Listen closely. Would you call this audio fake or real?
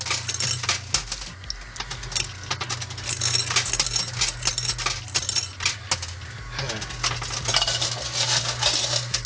real